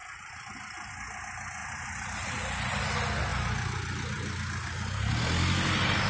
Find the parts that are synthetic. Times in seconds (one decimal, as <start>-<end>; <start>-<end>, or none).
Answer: 1.6-2.3